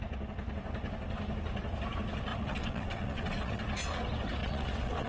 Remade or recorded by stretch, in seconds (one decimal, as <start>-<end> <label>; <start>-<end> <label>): 0.0-2.3 recorded; 2.3-3.6 remade; 3.6-4.4 recorded; 4.4-5.1 remade